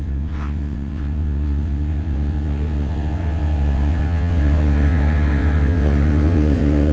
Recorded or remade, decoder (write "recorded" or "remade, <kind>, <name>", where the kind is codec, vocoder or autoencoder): remade, vocoder, WaveNeXt